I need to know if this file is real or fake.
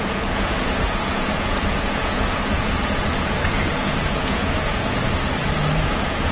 fake